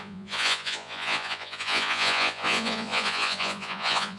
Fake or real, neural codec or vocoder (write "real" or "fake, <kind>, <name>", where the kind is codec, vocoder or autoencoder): fake, vocoder, Vocos